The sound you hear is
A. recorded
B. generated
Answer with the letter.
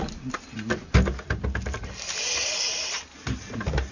A